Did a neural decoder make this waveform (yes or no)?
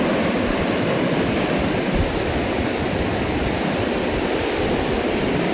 no